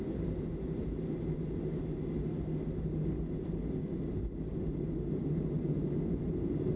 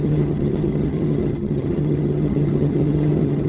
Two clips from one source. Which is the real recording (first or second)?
first